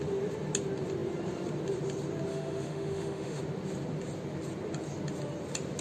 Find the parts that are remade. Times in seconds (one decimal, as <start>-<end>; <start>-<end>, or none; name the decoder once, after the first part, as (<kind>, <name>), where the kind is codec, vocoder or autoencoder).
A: 2.3-3.4 (autoencoder, DAC-VAE)